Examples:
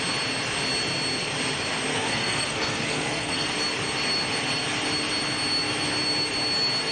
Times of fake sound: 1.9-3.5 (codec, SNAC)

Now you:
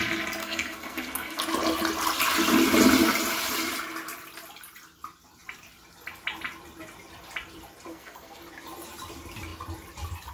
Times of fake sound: 0.4-1.4 (codec, SNAC); 7.9-8.4